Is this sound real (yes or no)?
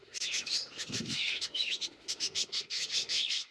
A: no